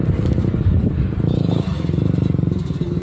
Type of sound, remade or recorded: recorded